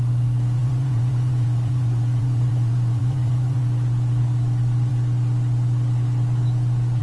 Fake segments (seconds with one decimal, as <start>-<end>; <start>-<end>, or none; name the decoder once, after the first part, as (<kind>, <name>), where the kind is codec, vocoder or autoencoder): 0.6-3.6 (vocoder, Vocos)